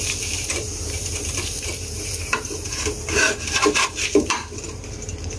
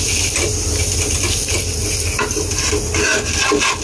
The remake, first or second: first